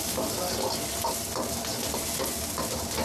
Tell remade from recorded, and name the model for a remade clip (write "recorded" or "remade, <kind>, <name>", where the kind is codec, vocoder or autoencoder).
recorded